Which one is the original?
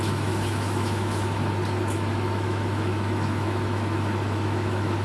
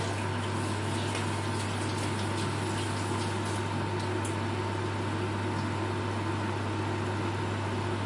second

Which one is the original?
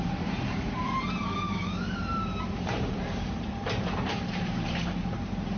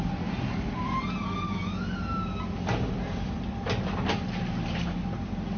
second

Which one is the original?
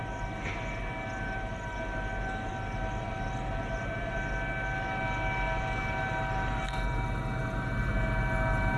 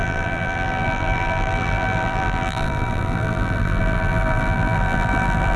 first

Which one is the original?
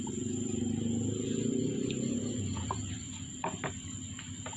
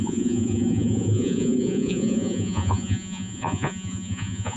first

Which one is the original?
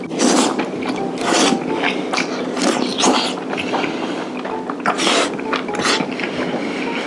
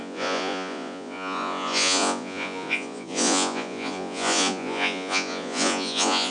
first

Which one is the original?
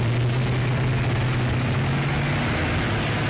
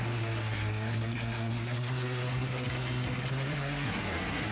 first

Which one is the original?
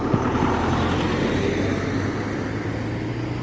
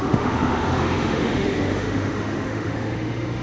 first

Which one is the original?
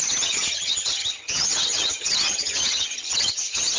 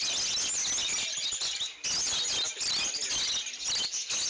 second